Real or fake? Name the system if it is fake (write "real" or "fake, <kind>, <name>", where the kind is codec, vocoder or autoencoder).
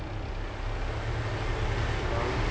real